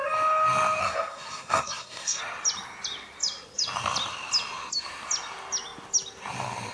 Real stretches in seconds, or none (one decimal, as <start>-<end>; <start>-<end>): 0.0-0.8; 2.2-6.7